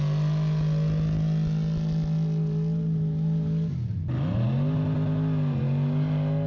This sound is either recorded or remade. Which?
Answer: recorded